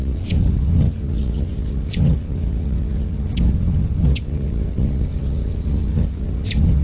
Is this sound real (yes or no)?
no